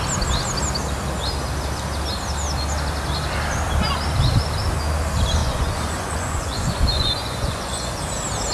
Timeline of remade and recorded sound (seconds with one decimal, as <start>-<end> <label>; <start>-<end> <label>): 0.0-5.4 recorded; 5.4-8.0 remade; 8.0-8.5 recorded